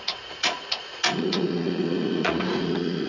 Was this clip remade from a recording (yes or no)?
yes